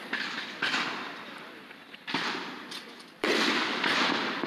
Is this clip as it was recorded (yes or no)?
no